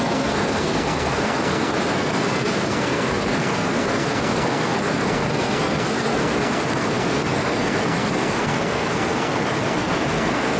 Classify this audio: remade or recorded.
remade